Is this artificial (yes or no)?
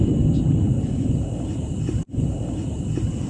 no